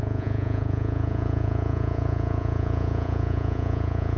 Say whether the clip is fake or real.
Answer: fake